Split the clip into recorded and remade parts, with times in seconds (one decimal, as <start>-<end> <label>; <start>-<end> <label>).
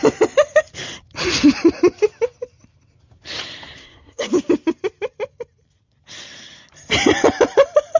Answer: 0.0-3.8 recorded; 3.8-4.3 remade; 4.3-8.0 recorded